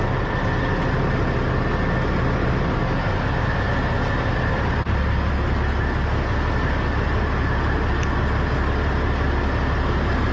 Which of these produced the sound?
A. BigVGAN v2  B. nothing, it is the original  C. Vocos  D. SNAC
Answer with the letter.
B